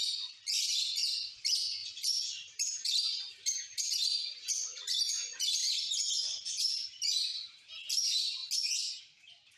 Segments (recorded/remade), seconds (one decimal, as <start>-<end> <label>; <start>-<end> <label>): 0.0-5.6 remade; 5.6-6.1 recorded; 6.1-8.4 remade; 8.4-9.0 recorded; 9.0-9.6 remade